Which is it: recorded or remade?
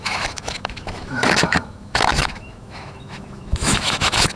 remade